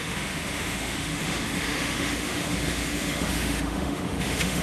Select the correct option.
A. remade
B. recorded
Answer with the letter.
A